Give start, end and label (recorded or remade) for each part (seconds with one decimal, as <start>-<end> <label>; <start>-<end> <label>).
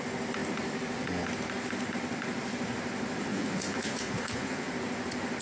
0.0-3.3 recorded; 3.3-4.7 remade; 4.7-5.4 recorded